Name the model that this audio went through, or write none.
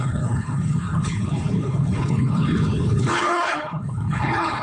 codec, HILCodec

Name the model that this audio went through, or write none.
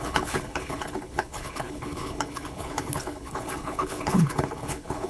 codec, HILCodec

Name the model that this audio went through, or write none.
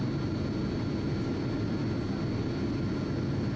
none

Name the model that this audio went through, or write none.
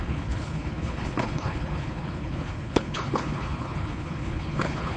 codec, HILCodec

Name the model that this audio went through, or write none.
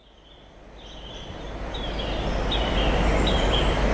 none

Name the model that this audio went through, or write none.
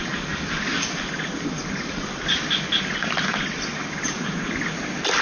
none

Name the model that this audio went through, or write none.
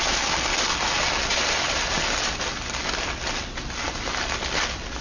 none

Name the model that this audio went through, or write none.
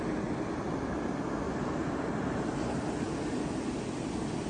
none